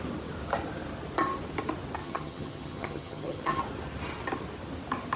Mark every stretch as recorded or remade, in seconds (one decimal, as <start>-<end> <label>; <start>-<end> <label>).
0.0-2.0 recorded; 2.0-3.6 remade; 3.6-5.2 recorded